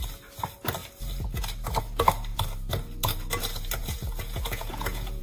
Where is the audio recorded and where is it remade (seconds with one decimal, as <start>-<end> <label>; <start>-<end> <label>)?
0.0-3.8 recorded; 3.8-5.2 remade